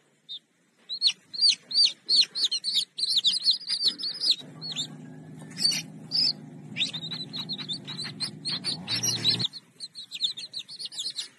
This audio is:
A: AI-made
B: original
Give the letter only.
B